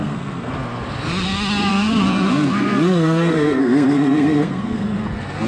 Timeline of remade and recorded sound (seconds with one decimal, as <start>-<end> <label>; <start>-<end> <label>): 0.0-0.5 remade; 0.5-1.7 recorded; 1.7-5.0 remade; 5.0-5.5 recorded